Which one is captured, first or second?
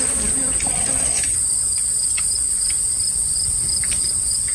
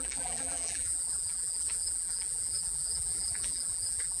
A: first